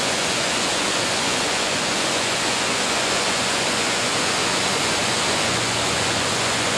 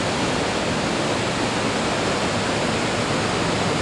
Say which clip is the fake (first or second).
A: first